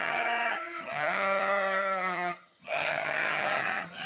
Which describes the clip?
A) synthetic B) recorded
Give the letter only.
A